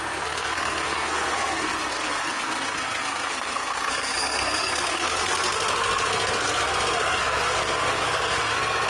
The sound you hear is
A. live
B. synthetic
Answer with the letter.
B